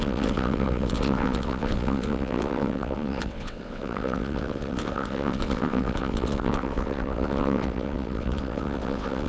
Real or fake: fake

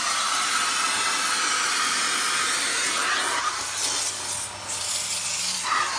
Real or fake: real